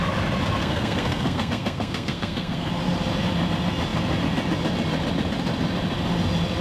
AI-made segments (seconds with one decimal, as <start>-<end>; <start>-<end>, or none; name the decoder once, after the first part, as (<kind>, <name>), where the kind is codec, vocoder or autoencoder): 0.6-2.7 (codec, SNAC)